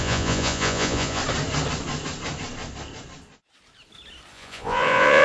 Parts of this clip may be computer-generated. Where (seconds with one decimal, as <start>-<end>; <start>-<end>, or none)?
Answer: 0.0-1.2; 4.3-5.2